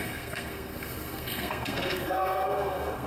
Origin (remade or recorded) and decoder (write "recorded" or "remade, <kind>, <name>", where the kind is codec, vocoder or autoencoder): remade, codec, SNAC